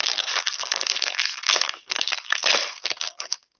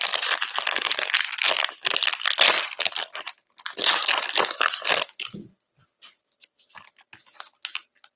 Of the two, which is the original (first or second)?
second